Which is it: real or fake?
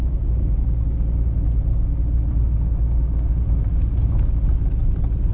real